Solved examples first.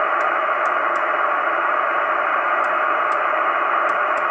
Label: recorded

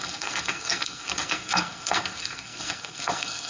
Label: remade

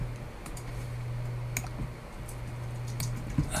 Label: recorded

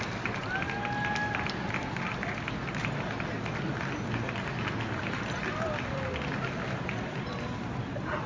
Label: recorded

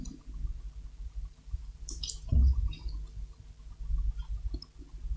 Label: recorded